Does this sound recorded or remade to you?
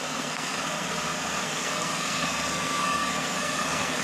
remade